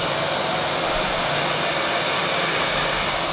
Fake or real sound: real